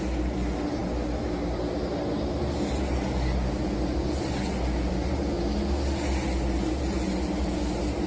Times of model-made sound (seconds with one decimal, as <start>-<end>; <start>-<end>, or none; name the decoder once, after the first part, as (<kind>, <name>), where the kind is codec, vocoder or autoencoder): none

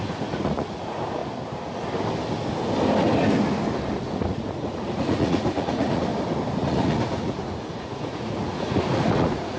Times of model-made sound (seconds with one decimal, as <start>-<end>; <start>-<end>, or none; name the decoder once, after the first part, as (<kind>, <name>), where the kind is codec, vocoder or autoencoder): 0.0-1.2 (vocoder, Vocos); 4.0-6.1; 6.6-9.6

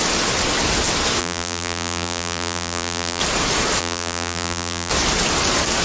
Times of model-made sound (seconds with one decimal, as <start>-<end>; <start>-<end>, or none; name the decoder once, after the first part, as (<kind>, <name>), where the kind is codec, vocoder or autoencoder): 1.2-3.2 (vocoder, BigVGAN v2); 3.8-4.9

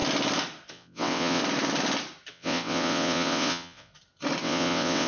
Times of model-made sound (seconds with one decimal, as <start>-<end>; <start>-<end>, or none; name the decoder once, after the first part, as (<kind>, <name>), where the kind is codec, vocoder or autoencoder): 0.7-1.4 (vocoder, WaveNeXt); 2.3-3.9; 4.4-5.1

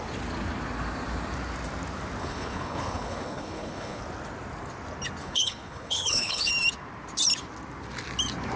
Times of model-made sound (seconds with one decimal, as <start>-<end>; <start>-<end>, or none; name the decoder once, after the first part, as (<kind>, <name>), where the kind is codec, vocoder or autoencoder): 2.2-4.0 (codec, HILCodec); 5.2-6.5

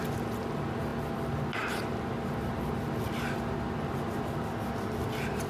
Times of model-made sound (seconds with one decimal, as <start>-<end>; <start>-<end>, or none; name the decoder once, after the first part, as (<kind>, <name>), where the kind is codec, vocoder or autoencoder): none